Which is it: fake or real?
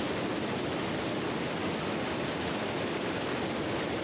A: real